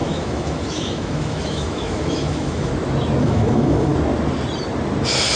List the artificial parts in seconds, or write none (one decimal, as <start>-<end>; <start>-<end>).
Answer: 0.0-2.7; 3.2-3.9